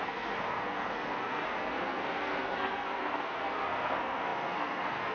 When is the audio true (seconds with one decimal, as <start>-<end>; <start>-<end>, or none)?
none